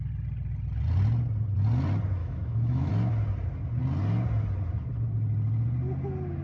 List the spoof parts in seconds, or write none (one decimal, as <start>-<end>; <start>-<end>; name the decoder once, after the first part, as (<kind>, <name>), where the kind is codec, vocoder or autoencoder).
2.2-2.9 (autoencoder, DAC-VAE)